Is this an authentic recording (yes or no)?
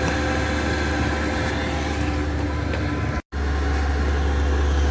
yes